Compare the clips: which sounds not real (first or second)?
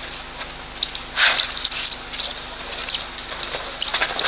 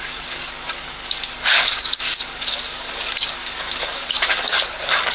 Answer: second